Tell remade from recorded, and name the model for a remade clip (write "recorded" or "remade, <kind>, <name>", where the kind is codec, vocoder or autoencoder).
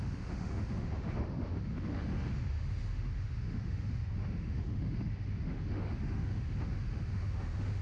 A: remade, autoencoder, DAC-VAE